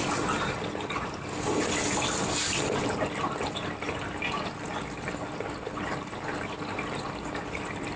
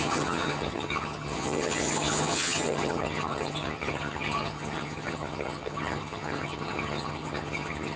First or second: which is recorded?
first